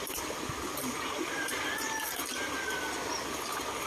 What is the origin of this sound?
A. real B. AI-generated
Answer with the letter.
A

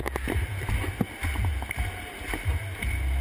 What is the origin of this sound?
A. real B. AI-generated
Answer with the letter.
A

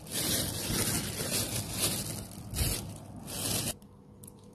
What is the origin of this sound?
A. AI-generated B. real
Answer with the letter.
B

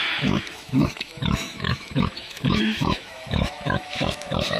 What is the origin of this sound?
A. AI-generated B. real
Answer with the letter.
A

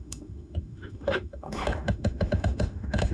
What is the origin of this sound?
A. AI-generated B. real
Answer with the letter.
A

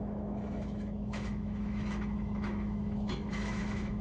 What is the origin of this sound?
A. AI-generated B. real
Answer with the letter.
A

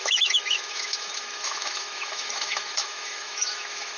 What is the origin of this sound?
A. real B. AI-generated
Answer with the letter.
B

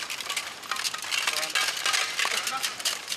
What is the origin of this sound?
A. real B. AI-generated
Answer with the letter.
A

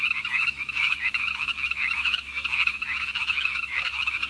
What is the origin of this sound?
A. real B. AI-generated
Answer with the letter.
B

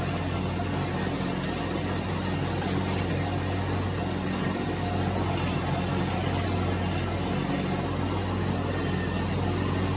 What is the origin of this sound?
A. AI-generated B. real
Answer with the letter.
B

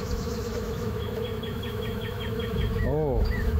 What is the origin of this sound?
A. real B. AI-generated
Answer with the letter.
B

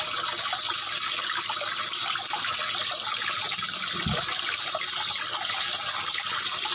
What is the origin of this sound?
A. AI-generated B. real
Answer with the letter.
B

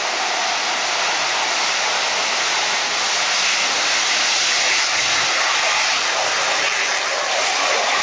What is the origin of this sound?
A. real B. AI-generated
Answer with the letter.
A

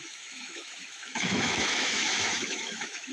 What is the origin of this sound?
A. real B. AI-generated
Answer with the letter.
B